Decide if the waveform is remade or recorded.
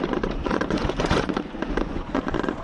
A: remade